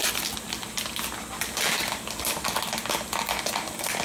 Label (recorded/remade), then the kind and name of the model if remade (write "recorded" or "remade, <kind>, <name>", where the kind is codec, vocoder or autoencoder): recorded